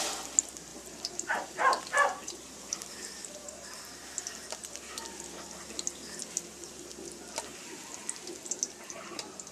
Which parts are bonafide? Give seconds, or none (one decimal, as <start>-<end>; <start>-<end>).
0.0-0.7; 1.8-2.2; 4.0-7.5; 8.0-9.5